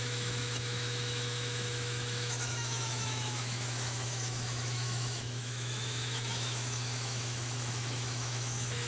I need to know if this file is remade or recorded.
remade